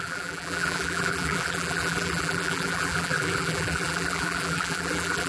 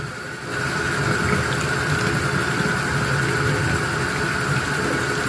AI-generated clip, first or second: first